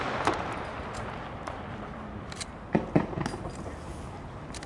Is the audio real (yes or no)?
yes